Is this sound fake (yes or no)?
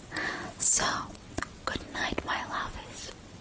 yes